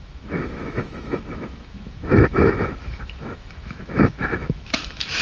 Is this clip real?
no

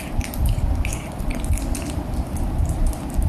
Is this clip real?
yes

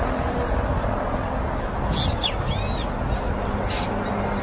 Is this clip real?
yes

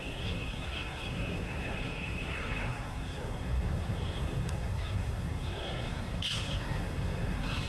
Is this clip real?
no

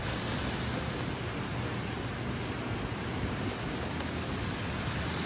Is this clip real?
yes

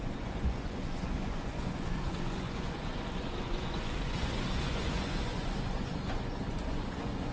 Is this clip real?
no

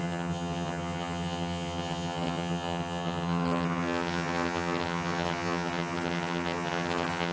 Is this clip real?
no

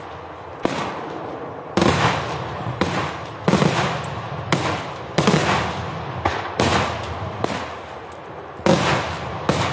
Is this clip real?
yes